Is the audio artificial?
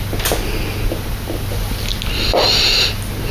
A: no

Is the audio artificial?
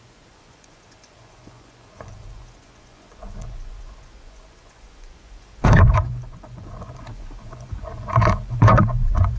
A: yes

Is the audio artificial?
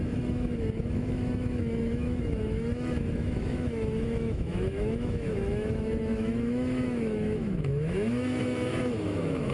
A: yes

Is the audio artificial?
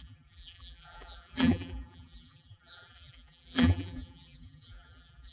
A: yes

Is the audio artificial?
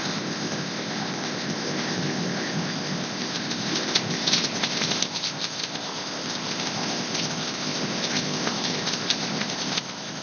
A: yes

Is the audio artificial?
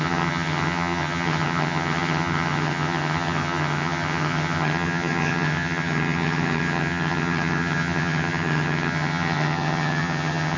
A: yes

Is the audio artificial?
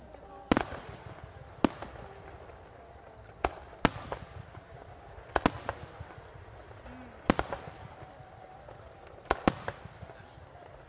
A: no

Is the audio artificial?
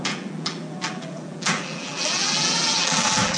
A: yes